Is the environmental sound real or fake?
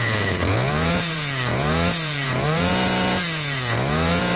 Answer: fake